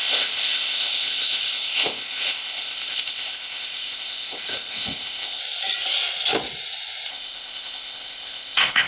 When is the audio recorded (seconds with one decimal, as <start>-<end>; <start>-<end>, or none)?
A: 5.4-7.1